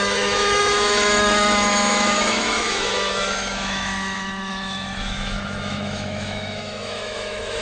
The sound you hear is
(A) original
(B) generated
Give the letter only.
B